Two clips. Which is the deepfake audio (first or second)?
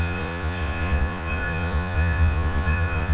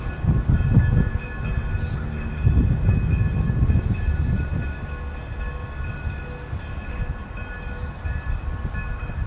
first